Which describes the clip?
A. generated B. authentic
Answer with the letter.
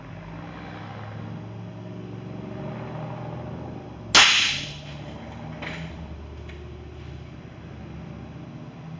B